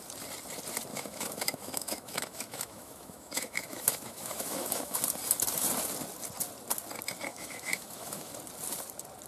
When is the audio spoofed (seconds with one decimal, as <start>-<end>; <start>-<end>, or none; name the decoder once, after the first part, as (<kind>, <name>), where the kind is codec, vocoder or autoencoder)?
0.9-5.0 (autoencoder, DAC-VAE); 7.3-8.3